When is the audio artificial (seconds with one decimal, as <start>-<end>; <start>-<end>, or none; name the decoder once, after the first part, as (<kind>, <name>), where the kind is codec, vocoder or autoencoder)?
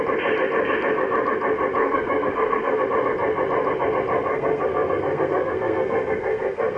1.8-2.8 (codec, SNAC); 4.3-6.8